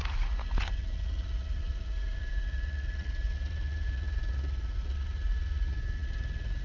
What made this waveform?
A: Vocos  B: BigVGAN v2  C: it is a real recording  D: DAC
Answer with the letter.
A